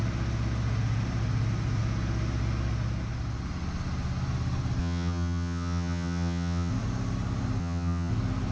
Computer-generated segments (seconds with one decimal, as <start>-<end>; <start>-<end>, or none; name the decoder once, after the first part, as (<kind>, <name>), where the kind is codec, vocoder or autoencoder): 4.8-6.7 (vocoder, HiFi-GAN); 7.6-8.1